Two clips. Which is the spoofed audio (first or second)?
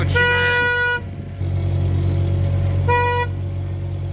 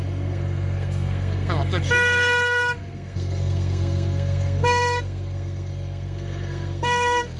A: second